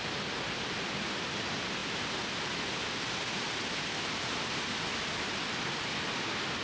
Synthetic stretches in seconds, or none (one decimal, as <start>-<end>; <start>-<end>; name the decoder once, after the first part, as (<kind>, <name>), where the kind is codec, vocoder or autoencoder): 0.0-6.6 (vocoder, BigVGAN v2)